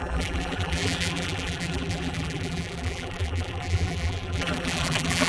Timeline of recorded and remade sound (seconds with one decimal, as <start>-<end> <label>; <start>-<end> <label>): 0.0-5.3 remade